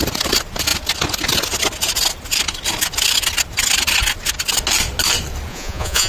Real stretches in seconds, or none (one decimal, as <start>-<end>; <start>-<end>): 0.0-5.5